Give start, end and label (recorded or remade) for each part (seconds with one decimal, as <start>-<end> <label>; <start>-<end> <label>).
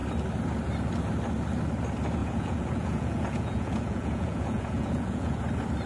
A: 0.0-2.2 recorded; 2.2-5.4 remade; 5.4-5.9 recorded